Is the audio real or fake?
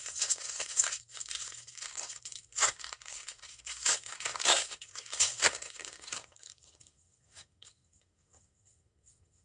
fake